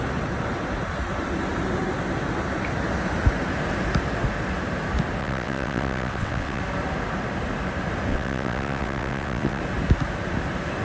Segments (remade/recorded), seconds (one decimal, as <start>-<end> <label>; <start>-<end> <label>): 0.0-5.2 recorded; 5.2-6.6 remade; 6.6-8.1 recorded; 8.1-9.6 remade; 9.6-10.8 recorded

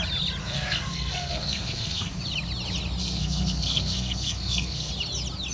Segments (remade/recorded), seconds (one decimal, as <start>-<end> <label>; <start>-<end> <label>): 0.0-0.4 recorded; 0.4-2.2 remade; 2.2-3.0 recorded; 3.0-4.9 remade; 4.9-5.5 recorded

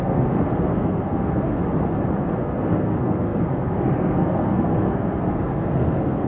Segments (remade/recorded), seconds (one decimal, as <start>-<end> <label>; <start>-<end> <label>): 0.0-1.6 remade; 1.6-2.4 recorded; 2.4-6.3 remade

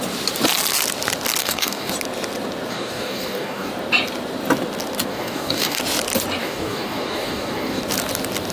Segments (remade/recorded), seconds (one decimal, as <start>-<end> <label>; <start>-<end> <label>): 0.0-1.4 recorded; 1.4-1.9 remade; 1.9-2.7 recorded; 2.7-3.7 remade; 3.7-5.1 recorded; 5.1-5.8 remade; 5.8-6.4 recorded; 6.4-7.8 remade; 7.8-8.5 recorded

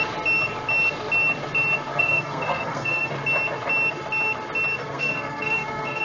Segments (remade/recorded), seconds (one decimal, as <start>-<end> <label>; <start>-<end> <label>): 0.0-1.9 recorded; 1.9-3.1 remade; 3.1-4.8 recorded; 4.8-6.0 remade

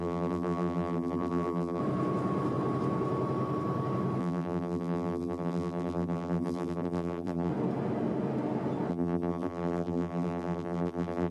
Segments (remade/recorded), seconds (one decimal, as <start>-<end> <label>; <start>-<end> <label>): 0.0-1.8 remade; 1.8-4.2 recorded; 4.2-7.5 remade; 7.5-8.9 recorded; 8.9-11.3 remade

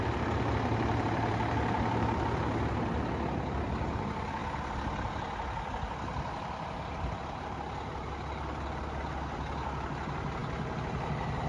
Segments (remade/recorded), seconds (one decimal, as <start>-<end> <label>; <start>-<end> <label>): 0.0-11.5 recorded

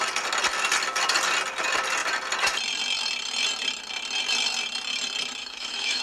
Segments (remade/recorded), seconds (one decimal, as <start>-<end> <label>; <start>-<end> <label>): 0.0-5.4 recorded; 5.4-6.0 remade